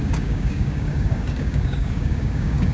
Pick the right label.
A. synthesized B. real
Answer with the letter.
A